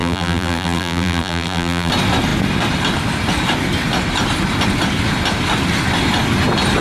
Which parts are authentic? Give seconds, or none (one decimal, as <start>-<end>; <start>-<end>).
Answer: 1.9-6.8

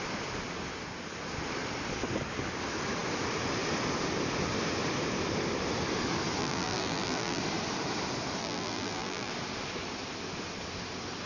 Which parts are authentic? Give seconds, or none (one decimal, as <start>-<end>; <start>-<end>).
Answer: 0.0-6.4; 7.4-8.4; 9.3-11.3

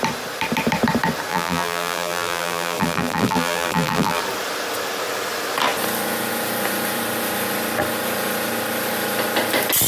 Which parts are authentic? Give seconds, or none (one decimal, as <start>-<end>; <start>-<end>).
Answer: 0.0-1.3; 4.2-9.9

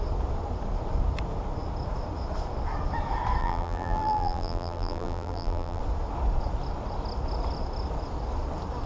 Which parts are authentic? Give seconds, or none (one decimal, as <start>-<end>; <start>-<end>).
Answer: 0.0-3.4; 5.8-8.9